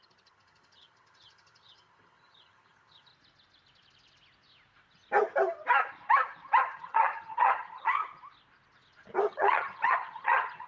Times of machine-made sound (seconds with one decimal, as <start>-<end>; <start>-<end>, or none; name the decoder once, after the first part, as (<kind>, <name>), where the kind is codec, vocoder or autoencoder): 0.0-3.1 (vocoder, HiFi-GAN); 6.6-8.0; 9.3-10.7